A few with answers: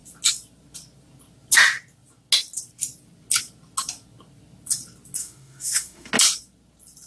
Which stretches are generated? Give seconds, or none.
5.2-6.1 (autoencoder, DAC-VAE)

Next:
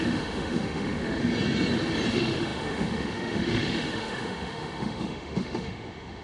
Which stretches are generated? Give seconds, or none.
0.0-1.2 (autoencoder, DAC-VAE); 2.1-6.2

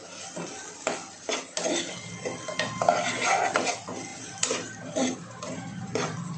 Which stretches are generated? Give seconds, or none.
4.1-5.4 (vocoder, BigVGAN v2)

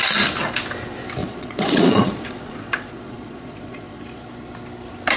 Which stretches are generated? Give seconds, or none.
1.2-4.3 (vocoder, Vocos)

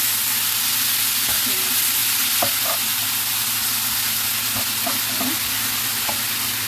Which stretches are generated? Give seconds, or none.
none

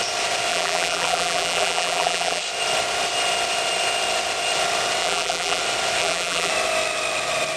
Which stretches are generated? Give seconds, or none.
0.5-2.4 (vocoder, BigVGAN v2); 5.0-5.6; 6.0-6.5

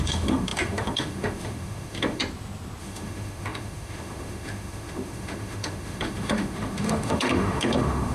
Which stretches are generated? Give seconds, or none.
0.0-2.2 (autoencoder, DAC-VAE); 2.8-8.1